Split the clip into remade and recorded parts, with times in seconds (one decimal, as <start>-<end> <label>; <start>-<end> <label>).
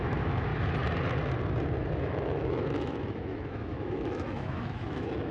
0.0-0.5 remade; 0.5-2.0 recorded; 2.0-5.3 remade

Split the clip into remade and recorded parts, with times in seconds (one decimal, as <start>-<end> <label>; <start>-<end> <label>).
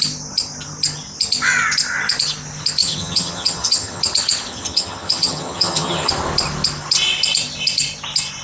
0.0-2.8 recorded; 2.8-4.0 remade; 4.0-4.5 recorded; 4.5-6.1 remade; 6.1-8.4 recorded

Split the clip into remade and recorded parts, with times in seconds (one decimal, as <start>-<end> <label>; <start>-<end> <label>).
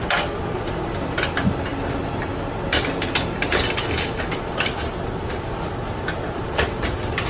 0.0-7.3 recorded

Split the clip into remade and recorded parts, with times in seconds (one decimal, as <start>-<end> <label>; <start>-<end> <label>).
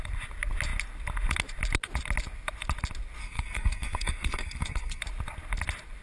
0.0-3.2 recorded; 3.2-5.0 remade; 5.0-6.0 recorded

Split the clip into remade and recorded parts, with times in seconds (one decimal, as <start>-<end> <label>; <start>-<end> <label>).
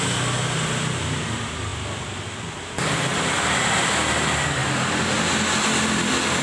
0.0-6.4 recorded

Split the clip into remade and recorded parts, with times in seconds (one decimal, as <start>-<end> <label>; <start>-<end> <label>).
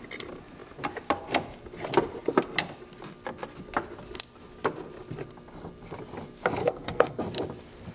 0.0-6.6 recorded; 6.6-7.2 remade; 7.2-7.9 recorded